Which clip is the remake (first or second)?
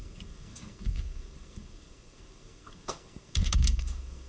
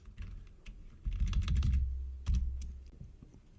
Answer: first